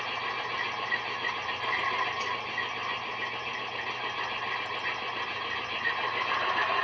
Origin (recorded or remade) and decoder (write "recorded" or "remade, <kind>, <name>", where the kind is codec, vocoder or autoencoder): recorded